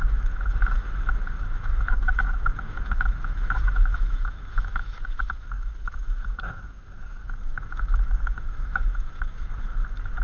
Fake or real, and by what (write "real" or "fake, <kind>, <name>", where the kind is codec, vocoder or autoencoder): fake, autoencoder, DAC-VAE